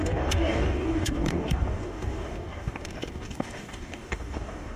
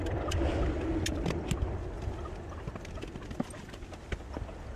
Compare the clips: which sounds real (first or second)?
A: second